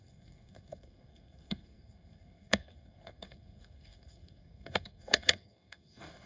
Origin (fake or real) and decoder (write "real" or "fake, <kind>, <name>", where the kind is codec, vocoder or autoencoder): fake, codec, SNAC